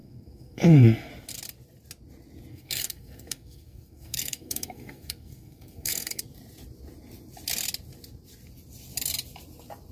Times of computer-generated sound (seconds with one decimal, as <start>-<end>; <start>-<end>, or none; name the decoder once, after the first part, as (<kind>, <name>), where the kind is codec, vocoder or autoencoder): 0.0-1.1 (codec, SNAC); 2.5-6.2